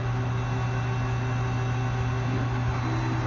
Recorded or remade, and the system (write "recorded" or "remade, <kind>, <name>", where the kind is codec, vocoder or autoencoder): recorded